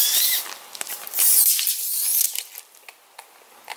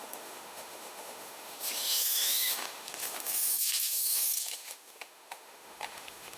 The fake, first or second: second